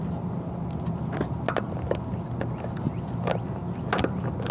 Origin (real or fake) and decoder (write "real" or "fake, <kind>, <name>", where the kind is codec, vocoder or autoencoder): real